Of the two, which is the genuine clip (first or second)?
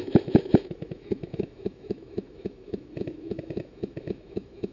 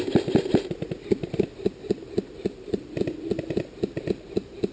second